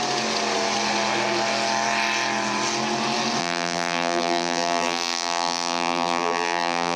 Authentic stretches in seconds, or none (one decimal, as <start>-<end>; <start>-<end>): 0.0-3.4

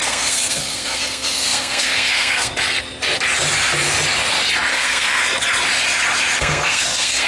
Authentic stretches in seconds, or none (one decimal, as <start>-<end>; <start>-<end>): 2.5-4.7; 5.2-6.4